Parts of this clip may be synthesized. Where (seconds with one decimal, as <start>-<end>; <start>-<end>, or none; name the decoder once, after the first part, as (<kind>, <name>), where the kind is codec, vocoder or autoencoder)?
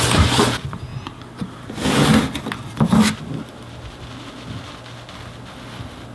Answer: none